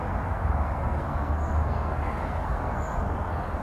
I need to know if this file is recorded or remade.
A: remade